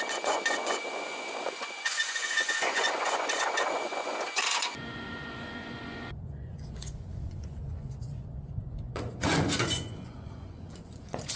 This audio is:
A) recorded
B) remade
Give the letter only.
B